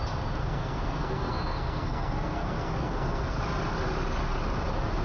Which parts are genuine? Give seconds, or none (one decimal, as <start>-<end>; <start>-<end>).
0.0-0.4; 3.4-5.0